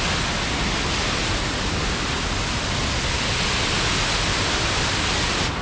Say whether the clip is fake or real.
real